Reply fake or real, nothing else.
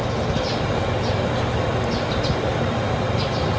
real